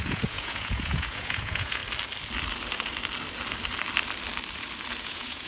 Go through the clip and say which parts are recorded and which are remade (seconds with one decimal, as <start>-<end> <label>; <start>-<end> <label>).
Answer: 0.0-1.8 remade; 1.8-5.0 recorded; 5.0-5.5 remade